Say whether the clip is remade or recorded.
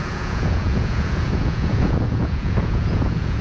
remade